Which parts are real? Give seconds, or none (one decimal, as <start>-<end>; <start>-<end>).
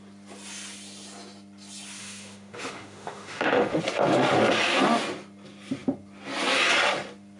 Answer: 0.0-2.0; 3.8-7.4